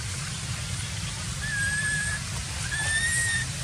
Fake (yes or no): no